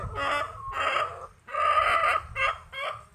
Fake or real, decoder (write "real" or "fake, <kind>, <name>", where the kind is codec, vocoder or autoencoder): real